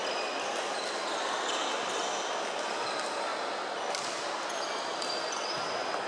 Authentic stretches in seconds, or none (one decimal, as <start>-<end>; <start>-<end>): 0.0-6.1